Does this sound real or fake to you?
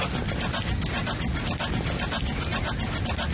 real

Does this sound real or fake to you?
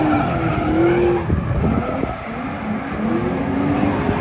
real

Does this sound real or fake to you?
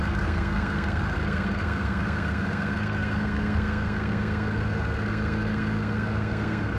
fake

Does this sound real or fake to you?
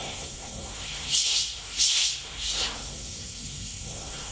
fake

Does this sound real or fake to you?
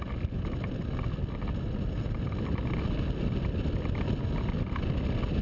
real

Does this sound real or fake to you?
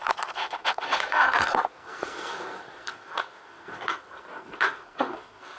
fake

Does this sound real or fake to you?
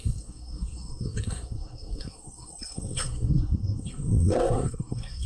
fake